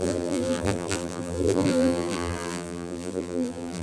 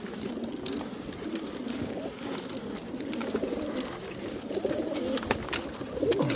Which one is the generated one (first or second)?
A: first